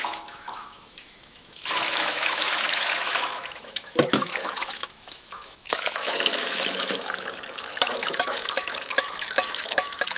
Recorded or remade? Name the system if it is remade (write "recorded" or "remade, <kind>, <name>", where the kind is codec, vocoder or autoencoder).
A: remade, autoencoder, DAC-VAE